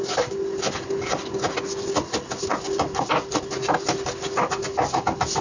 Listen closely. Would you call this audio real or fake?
real